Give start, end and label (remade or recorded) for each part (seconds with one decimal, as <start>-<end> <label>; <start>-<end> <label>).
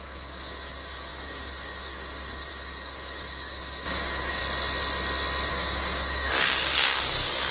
0.0-4.4 remade; 4.4-5.5 recorded; 5.5-7.5 remade